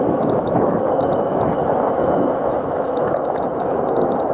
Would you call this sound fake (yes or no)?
yes